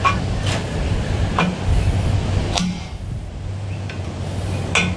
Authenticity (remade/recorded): recorded